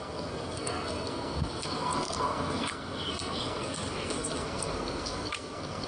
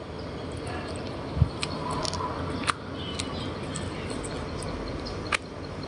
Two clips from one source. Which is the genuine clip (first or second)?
second